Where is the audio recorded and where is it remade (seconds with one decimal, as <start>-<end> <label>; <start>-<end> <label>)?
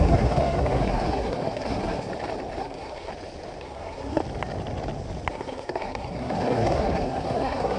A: 0.0-2.1 remade; 2.1-2.6 recorded; 2.6-3.1 remade; 3.1-3.6 recorded; 3.6-4.2 remade; 4.2-5.3 recorded; 5.3-7.8 remade